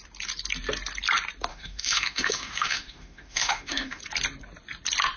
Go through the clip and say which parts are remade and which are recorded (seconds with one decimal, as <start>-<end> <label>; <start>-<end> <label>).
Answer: 0.0-1.5 recorded; 1.5-4.0 remade; 4.0-5.2 recorded